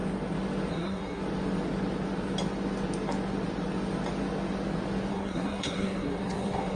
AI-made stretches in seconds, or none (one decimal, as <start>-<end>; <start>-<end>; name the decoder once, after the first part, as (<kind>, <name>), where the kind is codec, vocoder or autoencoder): 0.7-1.2 (codec, SNAC); 5.1-6.8